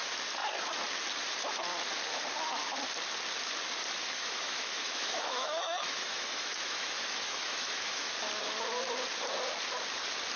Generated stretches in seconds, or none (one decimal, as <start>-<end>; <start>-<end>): 4.0-8.1